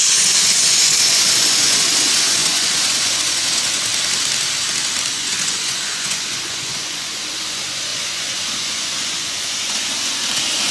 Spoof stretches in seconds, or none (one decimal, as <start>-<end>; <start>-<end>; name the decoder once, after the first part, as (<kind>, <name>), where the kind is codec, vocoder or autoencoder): 0.0-3.9 (vocoder, Vocos); 5.1-10.7